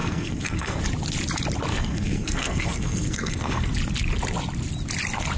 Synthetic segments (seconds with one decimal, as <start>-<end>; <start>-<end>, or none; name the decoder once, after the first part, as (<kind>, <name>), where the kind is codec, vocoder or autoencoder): 0.0-0.8 (codec, SNAC); 1.7-3.7